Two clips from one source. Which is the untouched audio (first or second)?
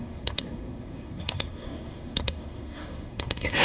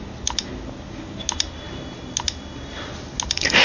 second